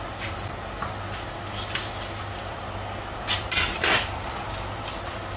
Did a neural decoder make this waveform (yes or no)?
no